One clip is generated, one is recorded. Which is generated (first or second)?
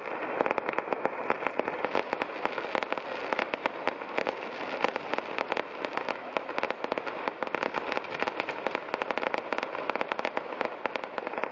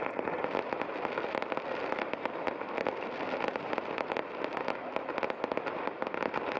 second